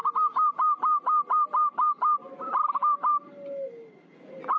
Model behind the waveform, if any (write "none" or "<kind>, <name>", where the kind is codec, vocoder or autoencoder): none